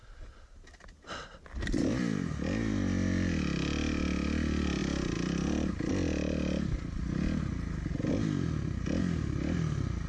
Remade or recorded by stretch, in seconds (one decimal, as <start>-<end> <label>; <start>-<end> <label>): 0.0-10.1 recorded